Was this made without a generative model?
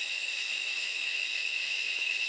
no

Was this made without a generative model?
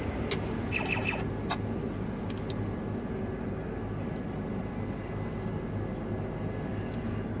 yes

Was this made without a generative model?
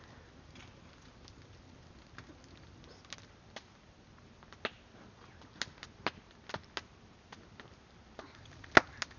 yes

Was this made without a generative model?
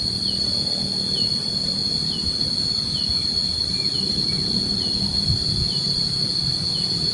yes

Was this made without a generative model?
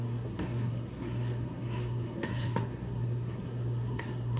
no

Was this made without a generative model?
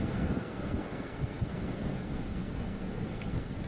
no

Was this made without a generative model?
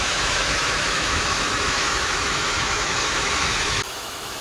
no